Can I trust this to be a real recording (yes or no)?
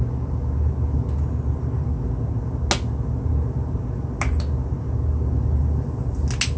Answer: yes